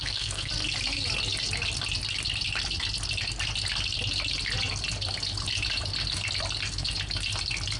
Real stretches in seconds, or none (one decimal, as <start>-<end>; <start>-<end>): 0.5-7.8